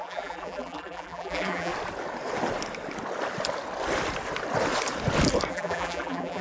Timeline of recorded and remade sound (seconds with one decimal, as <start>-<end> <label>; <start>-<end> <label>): 0.0-1.7 remade; 1.7-5.5 recorded; 5.5-6.4 remade